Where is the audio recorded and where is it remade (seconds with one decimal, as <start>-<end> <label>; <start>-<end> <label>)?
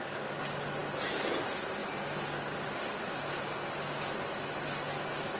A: 0.0-5.4 recorded